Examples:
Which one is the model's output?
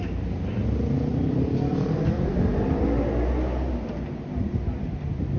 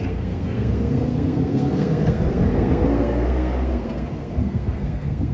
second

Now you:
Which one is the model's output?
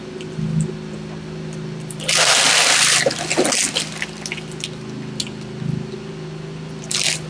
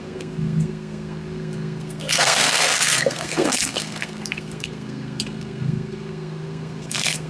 second